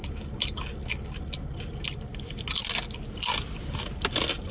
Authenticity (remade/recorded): recorded